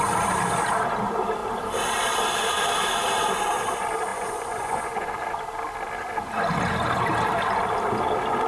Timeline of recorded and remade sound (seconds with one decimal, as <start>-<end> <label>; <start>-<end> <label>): 0.0-4.1 recorded; 4.1-5.1 remade; 5.1-8.5 recorded